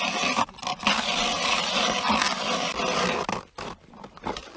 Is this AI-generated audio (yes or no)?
no